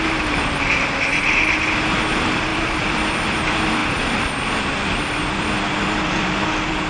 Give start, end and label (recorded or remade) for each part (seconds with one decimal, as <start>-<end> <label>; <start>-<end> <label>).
0.0-2.5 recorded; 2.5-3.0 remade; 3.0-6.9 recorded